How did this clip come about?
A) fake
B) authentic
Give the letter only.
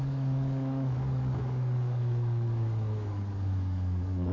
A